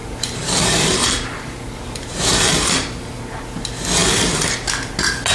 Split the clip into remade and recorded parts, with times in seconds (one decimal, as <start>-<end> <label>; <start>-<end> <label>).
0.0-3.2 remade; 3.2-5.3 recorded